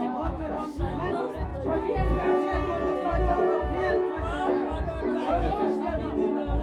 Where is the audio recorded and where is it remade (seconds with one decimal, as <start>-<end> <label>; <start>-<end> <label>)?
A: 0.0-1.5 remade; 1.5-3.6 recorded; 3.6-5.6 remade; 5.6-6.6 recorded